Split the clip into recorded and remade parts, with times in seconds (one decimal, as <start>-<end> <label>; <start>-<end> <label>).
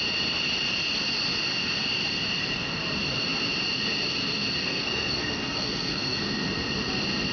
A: 0.0-4.6 recorded; 4.6-6.2 remade; 6.2-7.3 recorded